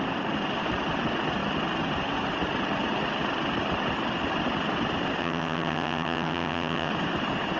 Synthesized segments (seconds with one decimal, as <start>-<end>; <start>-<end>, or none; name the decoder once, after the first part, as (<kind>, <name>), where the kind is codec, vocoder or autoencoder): 5.2-6.9 (vocoder, HiFi-GAN)